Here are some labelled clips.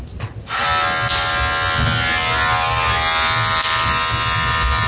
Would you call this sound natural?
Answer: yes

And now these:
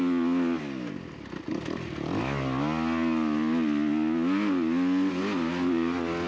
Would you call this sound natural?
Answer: yes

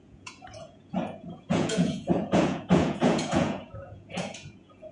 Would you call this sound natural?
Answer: no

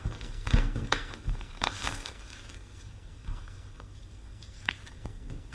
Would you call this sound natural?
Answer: no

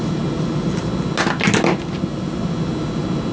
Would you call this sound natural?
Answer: yes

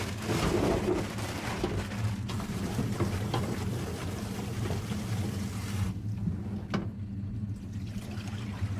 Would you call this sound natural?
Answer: yes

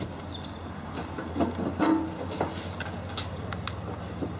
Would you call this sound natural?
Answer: yes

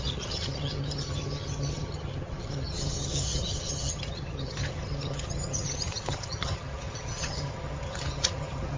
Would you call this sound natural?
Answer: no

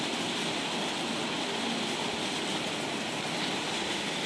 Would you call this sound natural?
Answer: yes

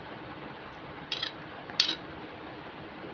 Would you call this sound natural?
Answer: yes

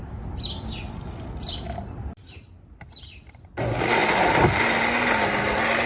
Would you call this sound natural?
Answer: yes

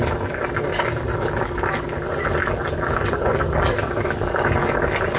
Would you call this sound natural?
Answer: yes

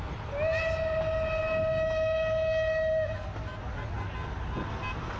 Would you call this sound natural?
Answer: yes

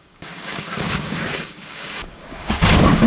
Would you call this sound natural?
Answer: no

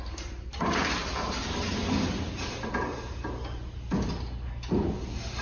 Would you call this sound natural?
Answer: yes